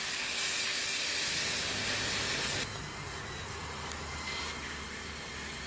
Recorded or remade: recorded